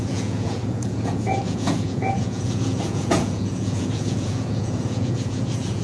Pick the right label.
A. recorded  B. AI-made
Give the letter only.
B